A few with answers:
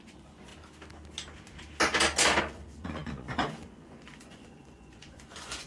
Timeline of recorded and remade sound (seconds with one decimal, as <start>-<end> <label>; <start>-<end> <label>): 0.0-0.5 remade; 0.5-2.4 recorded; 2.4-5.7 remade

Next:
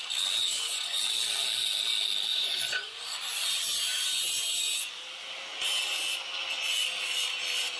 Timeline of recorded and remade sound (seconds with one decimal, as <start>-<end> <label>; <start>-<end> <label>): 0.0-0.4 recorded; 0.4-1.0 remade; 1.0-2.3 recorded; 2.3-3.0 remade; 3.0-3.9 recorded; 3.9-4.9 remade; 4.9-7.8 recorded

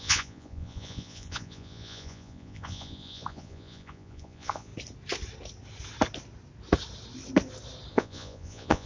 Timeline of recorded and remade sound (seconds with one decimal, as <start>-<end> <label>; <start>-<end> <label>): 0.0-4.7 remade; 4.7-7.9 recorded; 7.9-8.9 remade

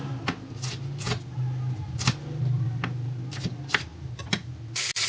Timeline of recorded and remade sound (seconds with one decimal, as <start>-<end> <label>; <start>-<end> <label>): 0.0-5.1 recorded

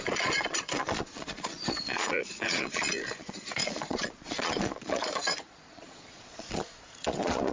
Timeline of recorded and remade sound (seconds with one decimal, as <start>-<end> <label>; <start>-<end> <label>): 0.0-7.5 remade

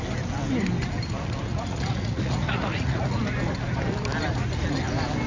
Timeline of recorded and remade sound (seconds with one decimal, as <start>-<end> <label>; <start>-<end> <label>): 0.0-1.5 recorded; 1.5-3.2 remade; 3.2-5.3 recorded

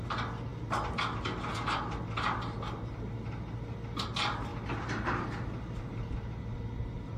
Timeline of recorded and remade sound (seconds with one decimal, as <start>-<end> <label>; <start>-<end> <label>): 0.0-7.2 recorded